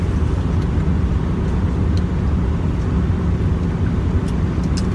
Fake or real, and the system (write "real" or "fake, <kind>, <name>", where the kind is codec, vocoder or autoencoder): real